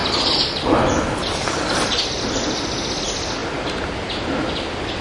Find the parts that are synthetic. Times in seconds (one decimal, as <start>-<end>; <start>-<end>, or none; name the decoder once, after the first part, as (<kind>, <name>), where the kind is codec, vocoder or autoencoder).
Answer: none